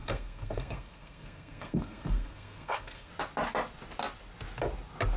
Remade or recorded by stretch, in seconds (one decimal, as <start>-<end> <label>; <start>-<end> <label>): 0.0-3.1 remade; 3.1-5.2 recorded